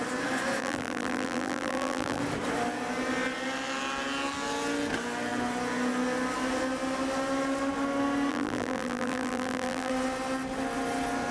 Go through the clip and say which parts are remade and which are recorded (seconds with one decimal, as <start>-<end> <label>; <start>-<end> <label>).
0.0-0.6 recorded; 0.6-2.2 remade; 2.2-8.3 recorded; 8.3-9.9 remade; 9.9-11.3 recorded